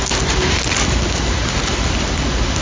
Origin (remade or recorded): recorded